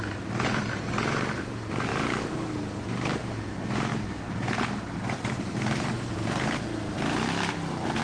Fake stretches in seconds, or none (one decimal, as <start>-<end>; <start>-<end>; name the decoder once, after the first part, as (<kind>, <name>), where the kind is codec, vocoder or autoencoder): 0.0-3.9 (vocoder, BigVGAN v2); 5.3-6.2